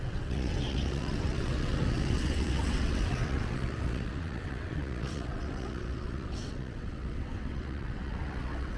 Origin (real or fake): fake